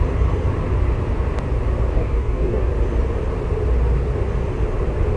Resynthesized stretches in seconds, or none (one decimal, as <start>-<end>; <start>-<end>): 1.9-2.7